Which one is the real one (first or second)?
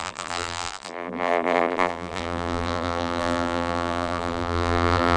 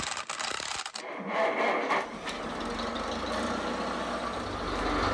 second